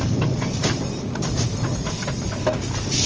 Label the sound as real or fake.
real